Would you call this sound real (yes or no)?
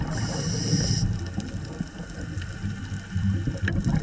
yes